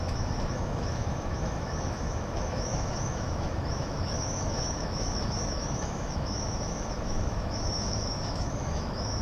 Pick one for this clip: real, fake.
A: fake